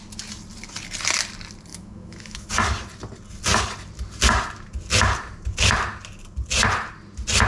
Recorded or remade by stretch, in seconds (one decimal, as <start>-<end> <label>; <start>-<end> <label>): 0.0-1.7 recorded; 1.7-2.5 remade; 2.5-7.5 recorded